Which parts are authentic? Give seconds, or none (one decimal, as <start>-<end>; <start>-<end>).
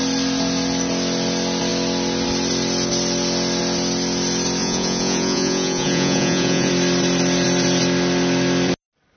0.0-4.6; 6.7-9.2